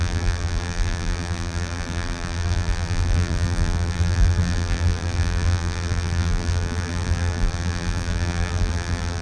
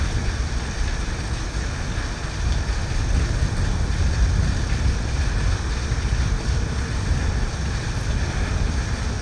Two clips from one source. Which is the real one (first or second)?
second